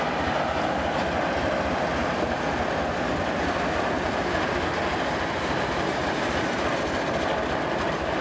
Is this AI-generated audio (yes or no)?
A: no